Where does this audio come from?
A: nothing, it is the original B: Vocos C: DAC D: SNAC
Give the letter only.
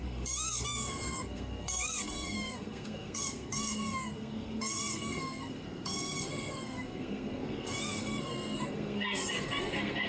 D